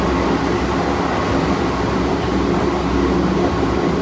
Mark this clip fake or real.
real